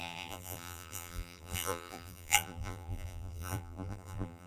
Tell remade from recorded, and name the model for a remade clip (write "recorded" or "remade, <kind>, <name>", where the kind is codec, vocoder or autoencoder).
remade, vocoder, BigVGAN v2